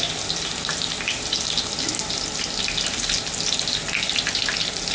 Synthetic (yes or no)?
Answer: no